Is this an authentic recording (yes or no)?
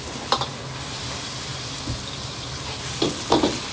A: yes